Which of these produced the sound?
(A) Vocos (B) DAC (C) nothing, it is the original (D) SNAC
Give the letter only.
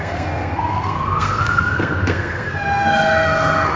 D